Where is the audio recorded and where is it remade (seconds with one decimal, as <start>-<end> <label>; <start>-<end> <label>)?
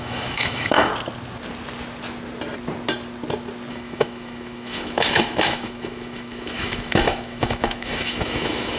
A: 0.0-0.9 remade; 0.9-3.7 recorded; 3.7-8.8 remade